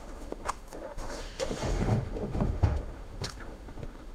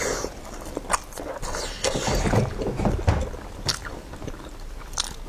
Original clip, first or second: second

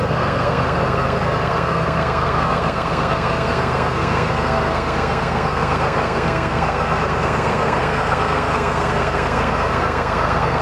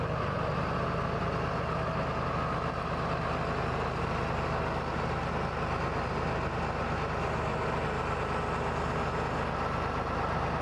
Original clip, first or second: second